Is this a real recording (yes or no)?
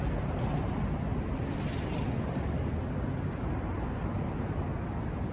yes